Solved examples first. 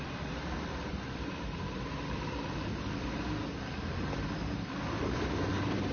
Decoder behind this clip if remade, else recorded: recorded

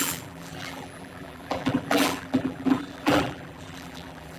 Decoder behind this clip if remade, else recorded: remade, vocoder, BigVGAN v2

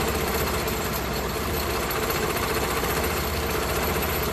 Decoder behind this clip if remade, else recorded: remade, vocoder, BigVGAN v2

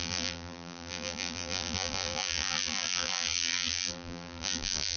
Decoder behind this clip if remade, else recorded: remade, vocoder, BigVGAN v2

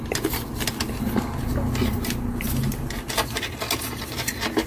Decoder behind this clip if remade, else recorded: recorded